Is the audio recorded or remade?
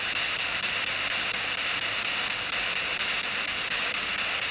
recorded